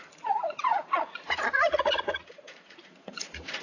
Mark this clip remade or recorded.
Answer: remade